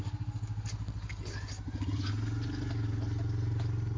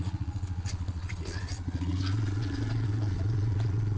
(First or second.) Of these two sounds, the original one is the first